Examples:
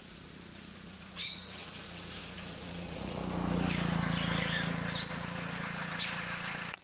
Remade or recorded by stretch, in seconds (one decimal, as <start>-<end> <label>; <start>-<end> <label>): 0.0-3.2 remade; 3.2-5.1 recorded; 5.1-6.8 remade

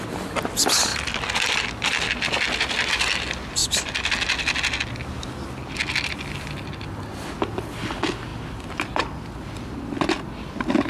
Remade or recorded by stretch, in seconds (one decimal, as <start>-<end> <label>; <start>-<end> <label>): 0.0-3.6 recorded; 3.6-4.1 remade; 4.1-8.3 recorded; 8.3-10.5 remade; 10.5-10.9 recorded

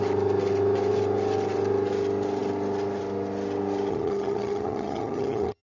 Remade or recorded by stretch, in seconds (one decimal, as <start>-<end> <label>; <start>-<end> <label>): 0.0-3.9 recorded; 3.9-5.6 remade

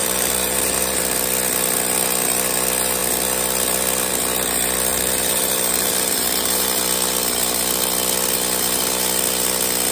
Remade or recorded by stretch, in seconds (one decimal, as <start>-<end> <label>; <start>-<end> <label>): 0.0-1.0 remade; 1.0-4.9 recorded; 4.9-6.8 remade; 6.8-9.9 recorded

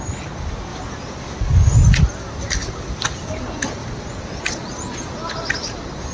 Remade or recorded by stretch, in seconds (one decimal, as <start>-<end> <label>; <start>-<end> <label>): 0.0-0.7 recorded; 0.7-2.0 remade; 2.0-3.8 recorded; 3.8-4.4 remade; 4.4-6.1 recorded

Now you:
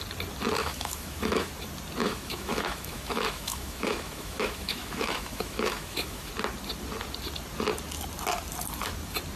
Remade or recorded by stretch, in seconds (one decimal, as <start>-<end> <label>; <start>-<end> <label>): 0.0-0.6 recorded; 0.6-1.5 remade; 1.5-2.0 recorded; 2.0-6.3 remade; 6.3-9.4 recorded

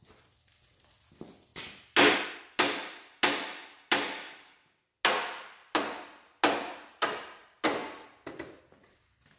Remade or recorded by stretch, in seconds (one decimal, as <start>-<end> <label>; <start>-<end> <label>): 0.0-9.4 recorded

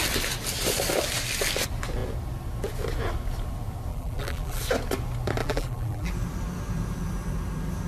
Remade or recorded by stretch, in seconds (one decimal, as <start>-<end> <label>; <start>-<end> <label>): 0.0-3.9 recorded; 3.9-4.6 remade; 4.6-5.4 recorded; 5.4-6.1 remade; 6.1-7.9 recorded